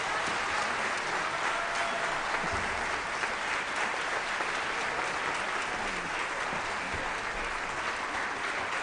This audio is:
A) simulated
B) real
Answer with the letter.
B